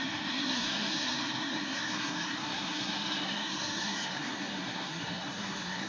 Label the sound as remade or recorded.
remade